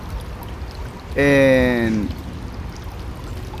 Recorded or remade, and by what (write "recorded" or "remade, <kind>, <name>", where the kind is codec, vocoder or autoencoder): recorded